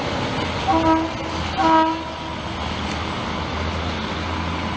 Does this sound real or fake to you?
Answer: real